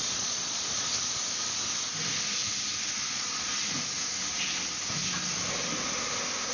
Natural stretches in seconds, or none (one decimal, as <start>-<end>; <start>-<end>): 0.9-3.1; 3.5-6.5